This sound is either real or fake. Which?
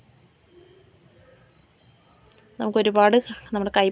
real